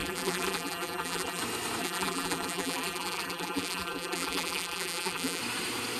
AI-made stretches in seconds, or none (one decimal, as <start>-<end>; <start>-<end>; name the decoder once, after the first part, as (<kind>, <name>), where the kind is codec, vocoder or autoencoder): 0.0-1.4 (vocoder, BigVGAN v2); 1.8-5.4

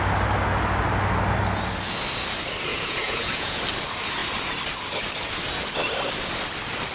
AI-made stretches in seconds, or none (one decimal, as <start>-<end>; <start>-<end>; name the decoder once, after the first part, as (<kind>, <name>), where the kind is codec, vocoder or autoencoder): 2.7-3.6 (vocoder, Vocos)